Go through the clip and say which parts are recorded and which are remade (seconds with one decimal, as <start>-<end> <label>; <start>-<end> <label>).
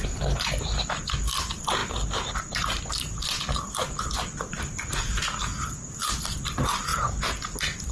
0.0-7.9 recorded